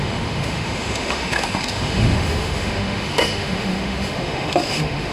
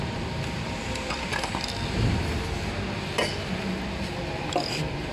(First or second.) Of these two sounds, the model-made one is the first